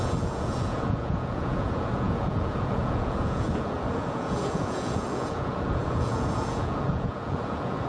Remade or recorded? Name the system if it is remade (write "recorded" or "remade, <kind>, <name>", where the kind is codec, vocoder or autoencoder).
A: remade, vocoder, Vocos